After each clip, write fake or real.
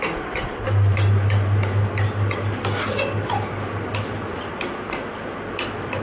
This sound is real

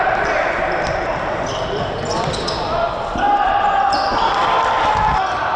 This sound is real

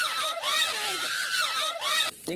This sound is real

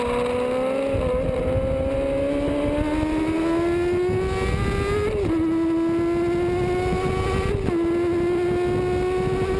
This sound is real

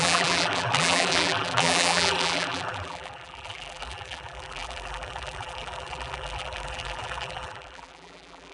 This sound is fake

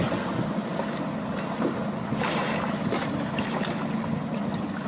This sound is real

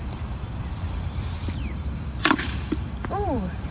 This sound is fake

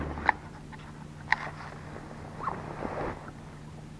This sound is real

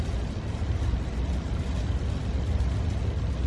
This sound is real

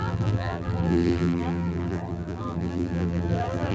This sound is fake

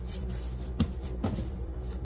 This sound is fake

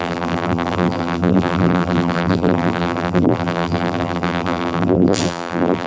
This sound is fake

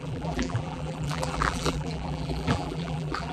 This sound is fake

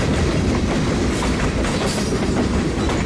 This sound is fake